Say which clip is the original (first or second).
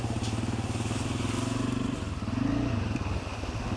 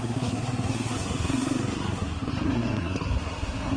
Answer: first